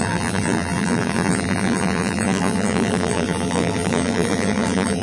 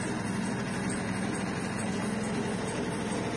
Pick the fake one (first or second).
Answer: first